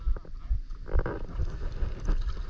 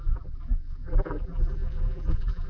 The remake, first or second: second